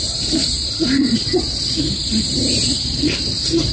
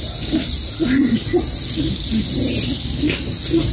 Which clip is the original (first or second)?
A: second